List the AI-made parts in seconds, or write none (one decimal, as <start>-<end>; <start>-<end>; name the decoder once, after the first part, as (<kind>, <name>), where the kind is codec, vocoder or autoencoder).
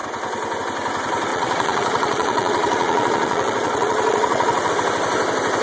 1.3-4.7 (vocoder, Vocos)